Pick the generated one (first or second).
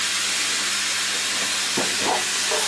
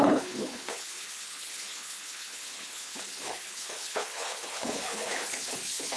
second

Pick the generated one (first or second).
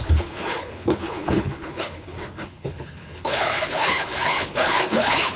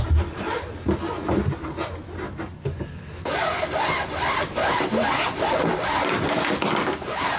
first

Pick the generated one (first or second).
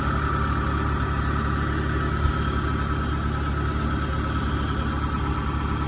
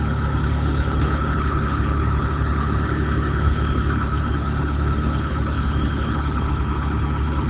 second